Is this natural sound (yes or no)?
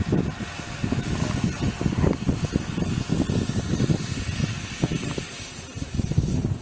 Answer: yes